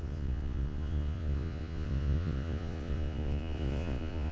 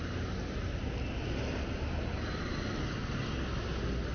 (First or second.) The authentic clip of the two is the second